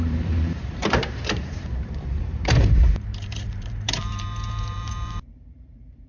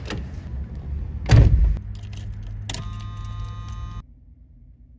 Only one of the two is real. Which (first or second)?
second